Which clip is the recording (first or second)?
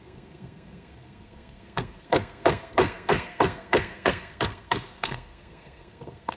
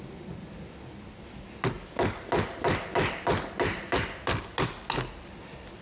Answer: second